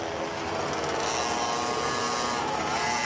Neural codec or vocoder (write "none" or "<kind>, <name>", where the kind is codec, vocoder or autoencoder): none